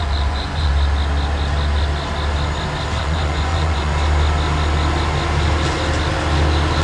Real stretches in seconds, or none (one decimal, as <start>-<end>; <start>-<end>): 0.7-3.0; 3.9-6.8